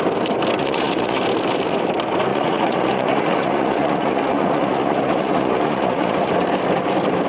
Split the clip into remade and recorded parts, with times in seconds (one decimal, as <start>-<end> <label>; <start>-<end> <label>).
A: 0.0-0.6 recorded; 0.6-1.2 remade; 1.2-2.3 recorded; 2.3-6.3 remade; 6.3-7.3 recorded